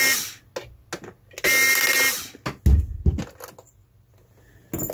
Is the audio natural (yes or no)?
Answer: yes